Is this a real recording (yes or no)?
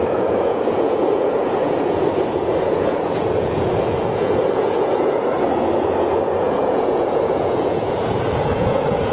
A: no